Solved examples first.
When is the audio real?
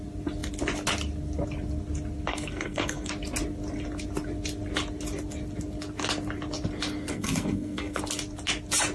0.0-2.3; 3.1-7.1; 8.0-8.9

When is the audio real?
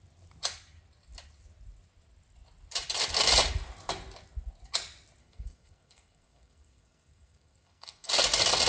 0.0-5.2; 8.1-8.7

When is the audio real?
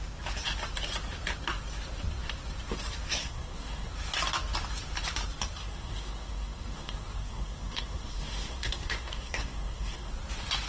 0.0-3.2; 3.9-5.6; 10.1-10.7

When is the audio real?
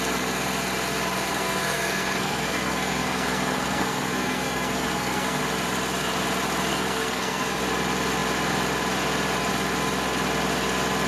0.0-1.3; 5.4-6.7; 7.6-11.1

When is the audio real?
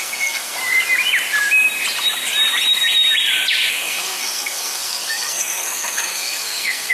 0.6-3.7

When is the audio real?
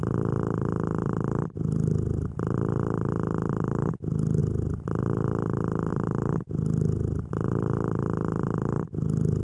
0.0-9.4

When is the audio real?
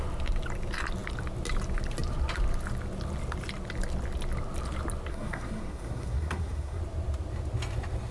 0.0-5.1; 6.8-8.1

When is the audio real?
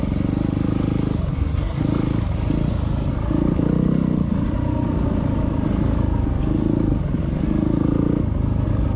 0.0-1.3; 1.8-9.0